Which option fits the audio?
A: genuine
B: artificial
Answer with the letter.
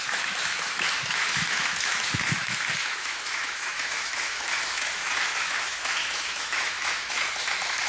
B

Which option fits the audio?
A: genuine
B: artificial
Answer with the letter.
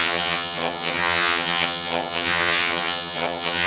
B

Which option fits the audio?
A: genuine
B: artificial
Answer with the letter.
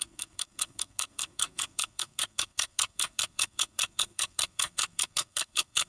B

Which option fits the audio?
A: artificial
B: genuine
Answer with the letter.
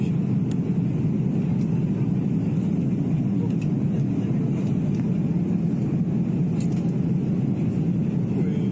B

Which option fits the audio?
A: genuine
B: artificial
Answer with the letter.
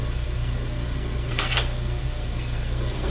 B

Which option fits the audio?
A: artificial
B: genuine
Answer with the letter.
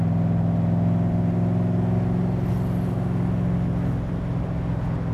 B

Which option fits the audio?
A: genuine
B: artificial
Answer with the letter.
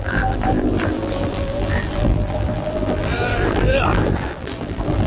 B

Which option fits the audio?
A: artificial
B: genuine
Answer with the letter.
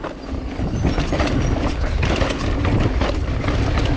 B